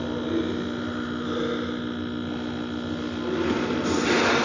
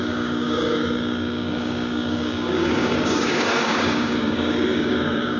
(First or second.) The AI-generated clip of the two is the second